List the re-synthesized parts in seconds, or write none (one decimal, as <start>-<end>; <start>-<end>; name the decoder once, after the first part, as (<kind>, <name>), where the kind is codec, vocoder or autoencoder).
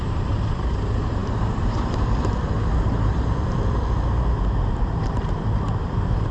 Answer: 0.0-3.6 (vocoder, BigVGAN v2); 4.7-6.3